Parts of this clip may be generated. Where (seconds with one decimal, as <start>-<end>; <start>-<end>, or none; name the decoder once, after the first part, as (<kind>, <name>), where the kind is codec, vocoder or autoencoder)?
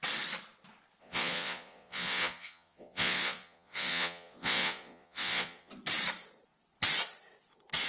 1.0-5.7 (vocoder, Vocos)